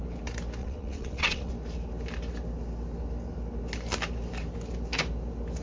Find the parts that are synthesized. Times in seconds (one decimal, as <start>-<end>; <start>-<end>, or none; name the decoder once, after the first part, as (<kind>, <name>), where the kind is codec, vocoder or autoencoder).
0.6-1.5 (vocoder, WaveNeXt)